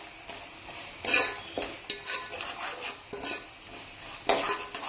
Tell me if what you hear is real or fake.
real